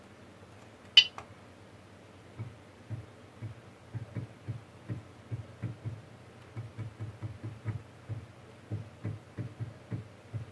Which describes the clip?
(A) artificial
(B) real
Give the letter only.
B